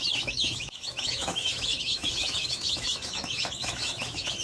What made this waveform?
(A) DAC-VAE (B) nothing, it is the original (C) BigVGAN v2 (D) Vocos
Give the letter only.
A